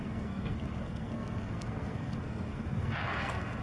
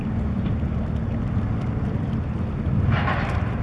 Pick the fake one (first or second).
first